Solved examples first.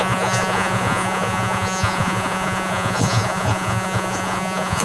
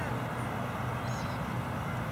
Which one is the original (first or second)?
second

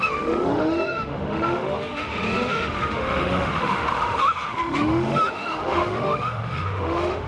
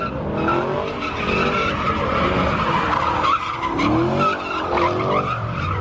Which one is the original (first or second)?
second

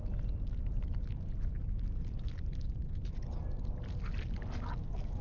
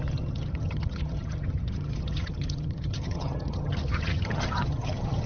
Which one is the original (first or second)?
first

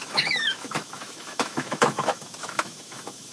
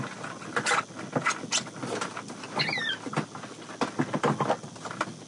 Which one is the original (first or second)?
second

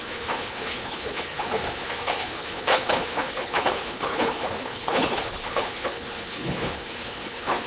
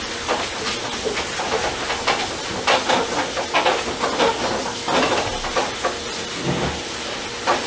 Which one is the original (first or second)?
second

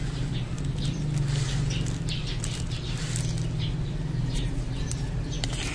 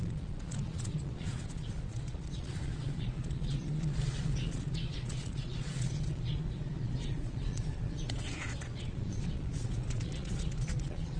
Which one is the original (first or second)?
first